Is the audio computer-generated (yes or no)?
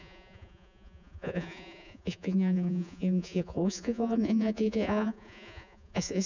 yes